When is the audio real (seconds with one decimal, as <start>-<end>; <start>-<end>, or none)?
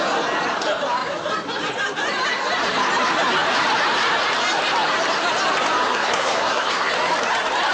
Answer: 0.0-5.8; 6.9-7.7